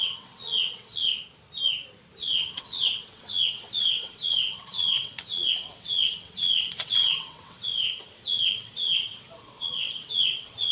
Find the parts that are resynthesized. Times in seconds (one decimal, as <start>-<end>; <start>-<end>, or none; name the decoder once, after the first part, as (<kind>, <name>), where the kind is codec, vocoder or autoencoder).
0.0-1.1 (vocoder, WaveNeXt); 2.2-10.7